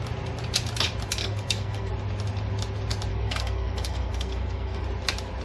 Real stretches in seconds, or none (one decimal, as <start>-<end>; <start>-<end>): 0.0-1.2; 1.9-3.1; 4.8-5.4